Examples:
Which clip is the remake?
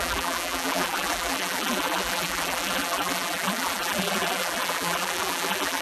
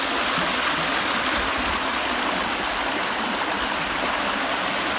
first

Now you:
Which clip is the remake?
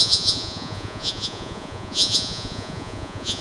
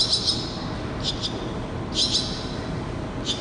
first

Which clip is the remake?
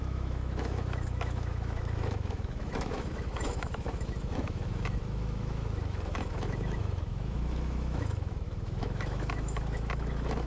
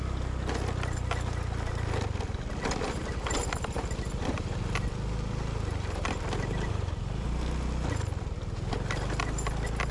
first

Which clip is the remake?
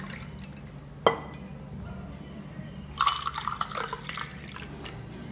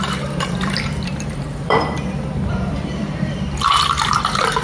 second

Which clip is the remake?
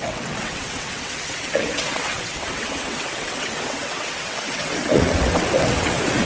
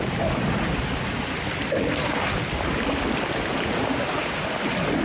first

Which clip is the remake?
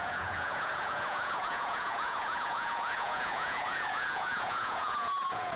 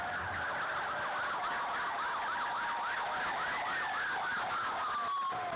first